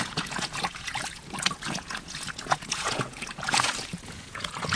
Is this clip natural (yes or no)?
no